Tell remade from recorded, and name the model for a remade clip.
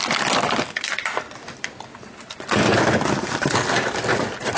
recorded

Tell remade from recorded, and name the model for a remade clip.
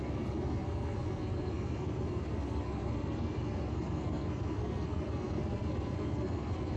remade, codec, SNAC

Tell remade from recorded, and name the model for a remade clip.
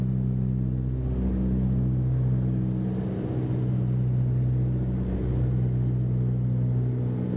recorded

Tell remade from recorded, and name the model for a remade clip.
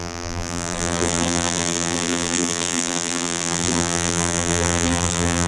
remade, vocoder, BigVGAN v2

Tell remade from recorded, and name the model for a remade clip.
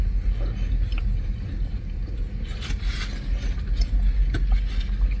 recorded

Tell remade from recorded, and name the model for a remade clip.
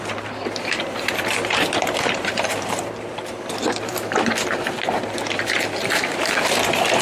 remade, vocoder, BigVGAN v2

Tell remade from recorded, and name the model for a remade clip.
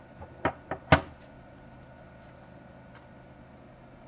recorded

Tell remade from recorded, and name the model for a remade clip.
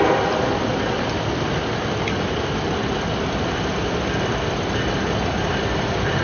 recorded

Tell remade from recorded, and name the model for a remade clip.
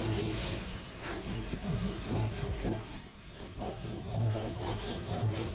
remade, codec, SNAC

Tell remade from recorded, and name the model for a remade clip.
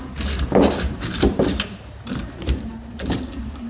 remade, vocoder, BigVGAN v2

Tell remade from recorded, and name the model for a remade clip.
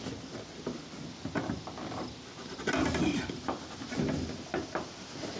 recorded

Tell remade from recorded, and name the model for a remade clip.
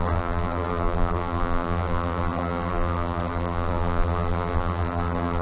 remade, vocoder, BigVGAN v2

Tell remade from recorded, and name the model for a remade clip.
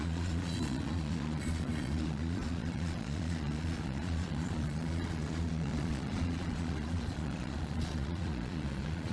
remade, vocoder, Vocos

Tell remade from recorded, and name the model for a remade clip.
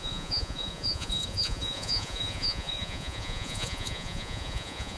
remade, vocoder, Vocos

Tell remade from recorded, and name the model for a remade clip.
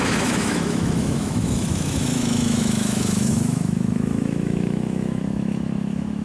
remade, autoencoder, DAC-VAE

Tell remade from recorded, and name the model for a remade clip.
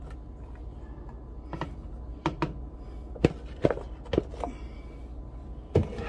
recorded